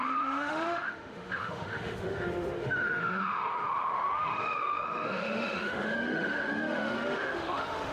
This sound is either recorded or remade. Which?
remade